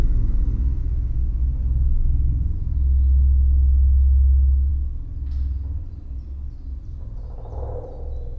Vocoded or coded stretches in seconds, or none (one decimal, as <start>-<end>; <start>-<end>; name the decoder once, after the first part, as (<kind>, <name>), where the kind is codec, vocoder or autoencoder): 0.8-1.4 (vocoder, Vocos)

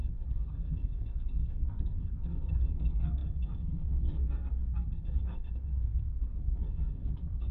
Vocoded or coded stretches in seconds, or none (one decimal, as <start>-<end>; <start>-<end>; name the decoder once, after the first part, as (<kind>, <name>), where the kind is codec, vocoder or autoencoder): 0.0-7.5 (codec, SNAC)